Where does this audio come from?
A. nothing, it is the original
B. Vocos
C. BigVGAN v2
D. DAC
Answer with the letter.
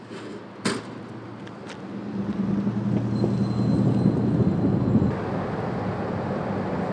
A